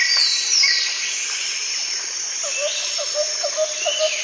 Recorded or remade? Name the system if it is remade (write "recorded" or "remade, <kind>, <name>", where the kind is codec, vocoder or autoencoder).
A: remade, vocoder, BigVGAN v2